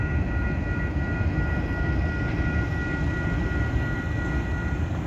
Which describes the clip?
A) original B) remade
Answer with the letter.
A